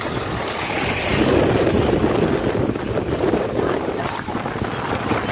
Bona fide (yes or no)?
yes